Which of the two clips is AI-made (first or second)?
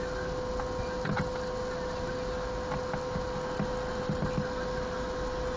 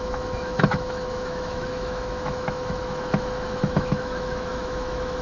second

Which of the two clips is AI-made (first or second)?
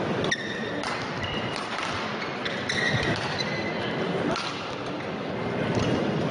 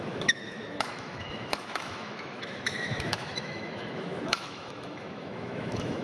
second